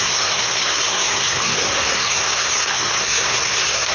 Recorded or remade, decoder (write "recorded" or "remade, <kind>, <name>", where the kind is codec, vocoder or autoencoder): remade, codec, SNAC